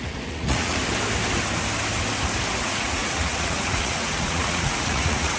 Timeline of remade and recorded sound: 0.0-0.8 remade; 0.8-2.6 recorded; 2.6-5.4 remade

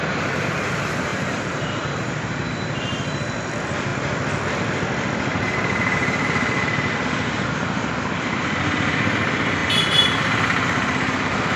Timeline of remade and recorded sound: 0.0-1.1 recorded; 1.1-3.5 remade; 3.5-5.3 recorded; 5.3-7.0 remade; 7.0-9.6 recorded; 9.6-11.6 remade